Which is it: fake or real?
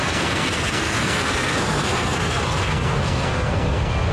fake